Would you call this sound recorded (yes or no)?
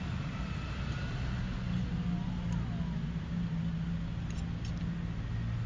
yes